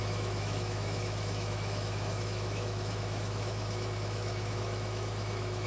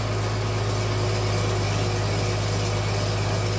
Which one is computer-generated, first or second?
first